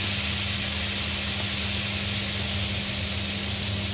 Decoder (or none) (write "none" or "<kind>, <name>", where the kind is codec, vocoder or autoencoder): none